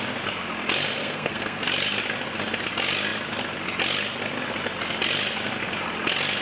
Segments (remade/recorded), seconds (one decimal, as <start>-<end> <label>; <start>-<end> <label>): 0.0-1.0 recorded; 1.0-1.6 remade; 1.6-6.4 recorded